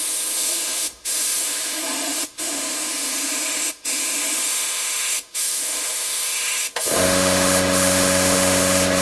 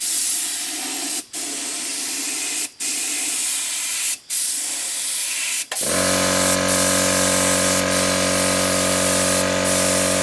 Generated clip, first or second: first